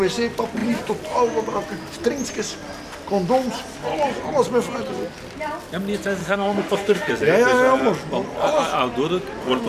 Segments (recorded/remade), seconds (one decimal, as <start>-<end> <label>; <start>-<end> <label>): 0.0-6.2 recorded; 6.2-7.1 remade; 7.1-9.7 recorded